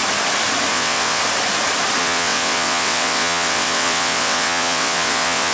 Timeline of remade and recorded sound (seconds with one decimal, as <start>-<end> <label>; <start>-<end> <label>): 0.0-0.7 recorded; 0.7-1.2 remade; 1.2-2.0 recorded; 2.0-5.5 remade